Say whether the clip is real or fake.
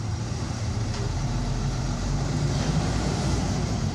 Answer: fake